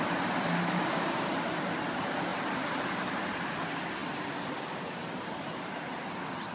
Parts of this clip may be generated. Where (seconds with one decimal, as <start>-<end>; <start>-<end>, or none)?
0.0-4.0; 5.4-6.5